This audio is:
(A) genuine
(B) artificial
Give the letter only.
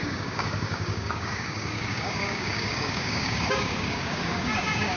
B